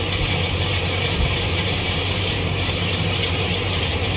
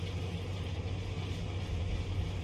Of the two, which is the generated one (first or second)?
first